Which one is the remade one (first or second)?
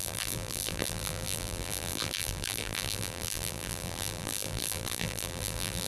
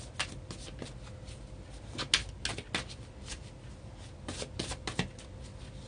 first